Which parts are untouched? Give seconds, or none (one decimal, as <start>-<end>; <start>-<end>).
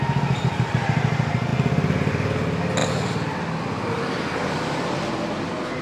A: 0.0-5.8